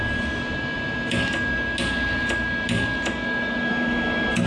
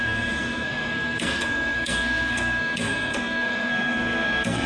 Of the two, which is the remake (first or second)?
second